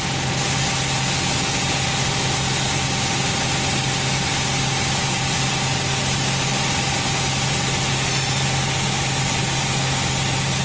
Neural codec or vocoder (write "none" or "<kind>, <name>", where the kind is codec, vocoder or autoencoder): none